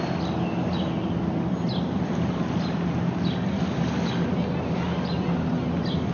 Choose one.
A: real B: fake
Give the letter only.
A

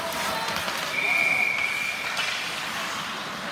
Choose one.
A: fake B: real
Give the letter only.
B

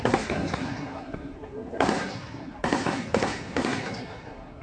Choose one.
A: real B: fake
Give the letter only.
B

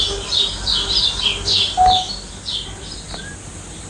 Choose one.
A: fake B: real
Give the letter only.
B